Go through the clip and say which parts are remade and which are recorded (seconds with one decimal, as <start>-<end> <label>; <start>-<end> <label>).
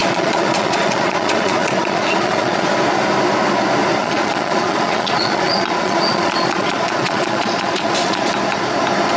0.0-2.7 remade; 2.7-4.0 recorded; 4.0-8.3 remade; 8.3-9.2 recorded